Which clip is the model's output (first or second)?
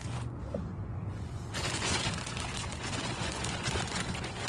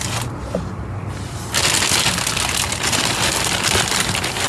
first